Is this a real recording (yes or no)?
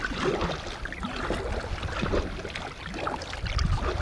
yes